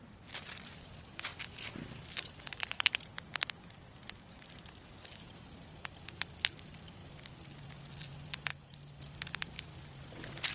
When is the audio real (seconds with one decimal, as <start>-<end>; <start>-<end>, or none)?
7.0-7.9; 8.5-9.0